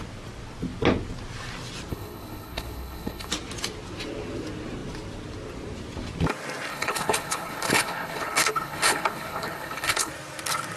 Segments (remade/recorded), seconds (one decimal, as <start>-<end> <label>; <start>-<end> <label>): 0.0-1.9 recorded; 1.9-3.3 remade; 3.3-6.7 recorded; 6.7-10.1 remade; 10.1-10.8 recorded